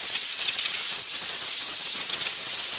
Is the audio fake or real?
fake